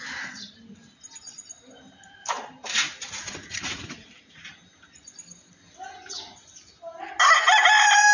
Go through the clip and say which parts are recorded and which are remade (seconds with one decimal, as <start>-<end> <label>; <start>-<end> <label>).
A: 0.0-3.2 recorded; 3.2-4.5 remade; 4.5-8.1 recorded